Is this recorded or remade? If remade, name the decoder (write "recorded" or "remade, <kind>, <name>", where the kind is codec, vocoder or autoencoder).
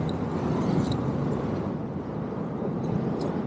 remade, vocoder, BigVGAN v2